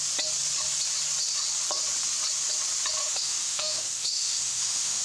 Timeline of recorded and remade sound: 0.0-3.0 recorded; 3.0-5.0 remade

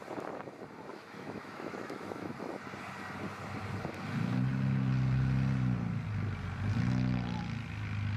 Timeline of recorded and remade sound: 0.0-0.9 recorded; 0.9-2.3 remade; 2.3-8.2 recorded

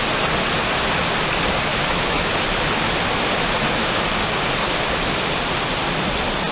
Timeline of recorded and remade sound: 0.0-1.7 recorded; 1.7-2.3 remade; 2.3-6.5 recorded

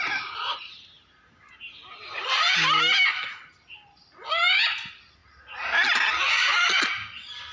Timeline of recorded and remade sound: 0.0-7.5 recorded

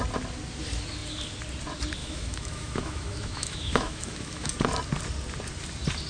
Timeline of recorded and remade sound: 0.0-2.0 recorded; 2.0-4.5 remade; 4.5-6.1 recorded

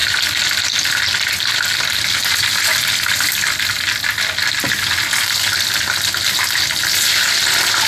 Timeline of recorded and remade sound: 0.0-7.9 recorded

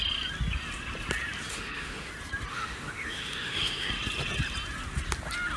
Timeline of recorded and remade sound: 0.0-1.5 recorded; 1.5-2.1 remade; 2.1-2.5 recorded; 2.5-3.9 remade; 3.9-5.6 recorded